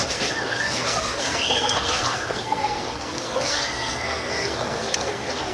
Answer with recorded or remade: remade